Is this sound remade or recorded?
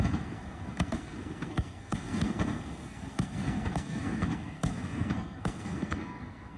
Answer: remade